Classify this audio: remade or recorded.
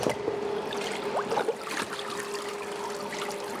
recorded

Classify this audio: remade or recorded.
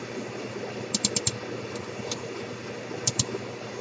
recorded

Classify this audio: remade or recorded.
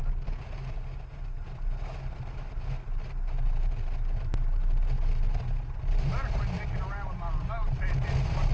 recorded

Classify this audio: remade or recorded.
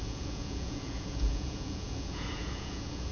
remade